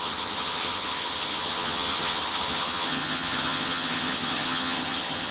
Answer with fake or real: fake